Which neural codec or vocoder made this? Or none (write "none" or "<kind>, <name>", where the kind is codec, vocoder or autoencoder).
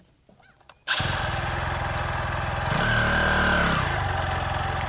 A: none